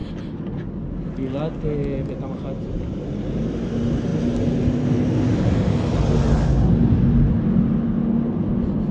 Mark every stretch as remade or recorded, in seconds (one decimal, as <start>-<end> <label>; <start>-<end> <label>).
0.0-8.9 recorded

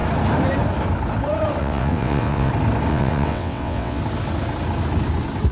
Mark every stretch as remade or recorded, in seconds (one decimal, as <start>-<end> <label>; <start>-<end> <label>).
0.0-1.6 recorded; 1.6-2.5 remade; 2.5-2.9 recorded; 2.9-4.0 remade; 4.0-5.5 recorded